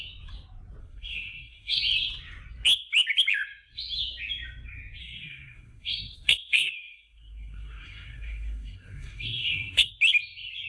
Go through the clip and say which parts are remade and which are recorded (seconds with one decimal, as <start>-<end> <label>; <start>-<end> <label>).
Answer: 0.0-0.8 recorded; 0.8-1.8 remade; 1.8-5.0 recorded; 5.0-9.9 remade; 9.9-10.7 recorded